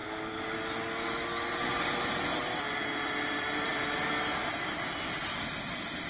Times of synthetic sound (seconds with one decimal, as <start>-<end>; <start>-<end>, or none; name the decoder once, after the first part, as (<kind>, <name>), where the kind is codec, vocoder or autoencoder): none